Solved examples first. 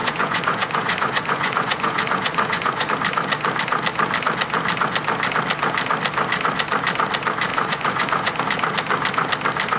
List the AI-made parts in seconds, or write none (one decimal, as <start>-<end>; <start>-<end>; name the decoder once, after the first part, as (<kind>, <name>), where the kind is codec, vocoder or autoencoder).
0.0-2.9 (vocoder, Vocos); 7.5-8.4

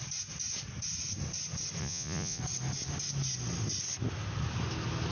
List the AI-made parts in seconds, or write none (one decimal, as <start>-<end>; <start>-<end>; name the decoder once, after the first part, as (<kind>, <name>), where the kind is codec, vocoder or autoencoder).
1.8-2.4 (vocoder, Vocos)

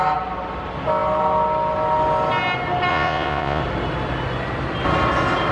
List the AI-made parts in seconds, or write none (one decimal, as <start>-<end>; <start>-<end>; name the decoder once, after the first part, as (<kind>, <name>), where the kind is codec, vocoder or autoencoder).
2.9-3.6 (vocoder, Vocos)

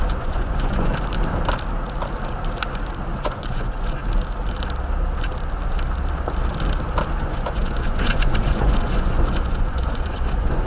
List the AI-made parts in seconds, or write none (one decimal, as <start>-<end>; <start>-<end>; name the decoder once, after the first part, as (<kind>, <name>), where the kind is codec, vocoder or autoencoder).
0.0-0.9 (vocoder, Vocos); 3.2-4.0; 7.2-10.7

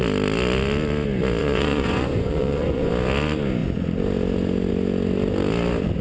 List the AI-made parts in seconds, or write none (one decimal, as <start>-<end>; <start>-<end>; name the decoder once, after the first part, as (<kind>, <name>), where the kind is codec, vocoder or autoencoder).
1.4-2.9 (vocoder, Vocos)

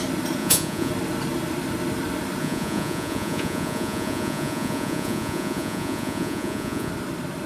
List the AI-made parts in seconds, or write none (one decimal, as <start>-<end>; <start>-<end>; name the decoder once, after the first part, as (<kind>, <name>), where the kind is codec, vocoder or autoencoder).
0.4-0.9 (vocoder, Vocos); 2.4-6.9